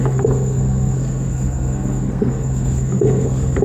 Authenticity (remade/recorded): remade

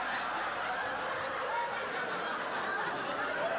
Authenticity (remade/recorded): recorded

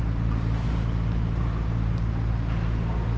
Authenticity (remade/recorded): recorded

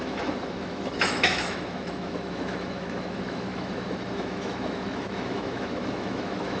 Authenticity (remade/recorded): remade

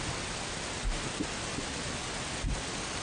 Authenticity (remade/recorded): recorded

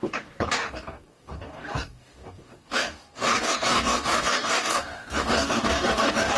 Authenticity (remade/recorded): remade